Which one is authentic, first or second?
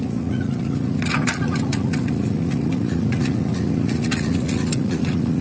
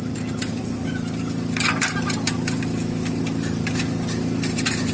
second